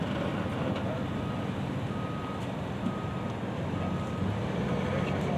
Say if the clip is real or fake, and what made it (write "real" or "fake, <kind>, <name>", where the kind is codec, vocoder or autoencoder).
real